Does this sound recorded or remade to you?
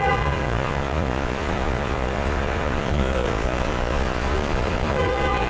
remade